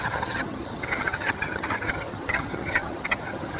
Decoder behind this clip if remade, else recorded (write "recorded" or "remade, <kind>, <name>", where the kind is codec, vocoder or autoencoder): remade, vocoder, HiFi-GAN